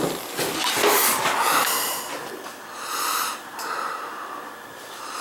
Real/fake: real